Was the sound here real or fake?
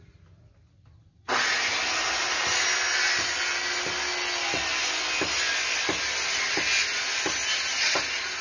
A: real